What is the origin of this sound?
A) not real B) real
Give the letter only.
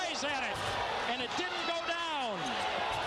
B